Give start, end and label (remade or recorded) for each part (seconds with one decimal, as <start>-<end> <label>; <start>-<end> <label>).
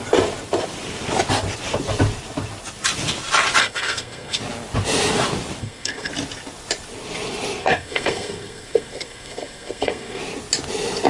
0.0-3.6 recorded; 3.6-4.4 remade; 4.4-5.6 recorded; 5.6-6.1 remade; 6.1-7.6 recorded; 7.6-10.2 remade; 10.2-11.1 recorded